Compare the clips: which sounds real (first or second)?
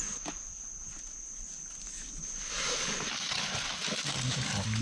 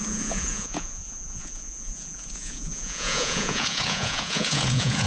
first